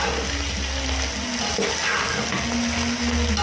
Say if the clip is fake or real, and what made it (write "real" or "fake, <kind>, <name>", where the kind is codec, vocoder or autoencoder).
real